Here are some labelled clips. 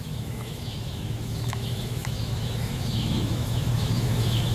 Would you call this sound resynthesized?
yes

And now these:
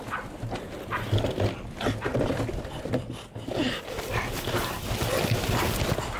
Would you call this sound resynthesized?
no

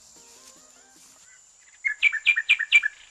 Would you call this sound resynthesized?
no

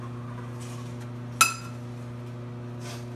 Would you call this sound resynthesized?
no